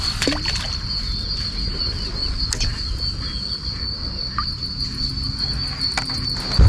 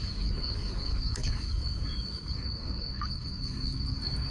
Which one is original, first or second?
first